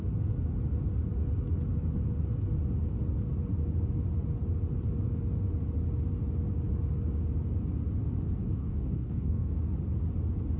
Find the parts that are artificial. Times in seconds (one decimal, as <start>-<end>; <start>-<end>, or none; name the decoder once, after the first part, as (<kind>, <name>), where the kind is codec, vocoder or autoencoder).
8.4-9.5 (codec, DAC)